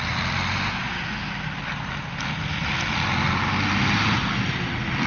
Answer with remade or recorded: recorded